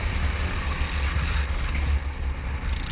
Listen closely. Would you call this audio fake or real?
real